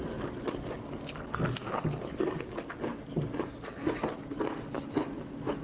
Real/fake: real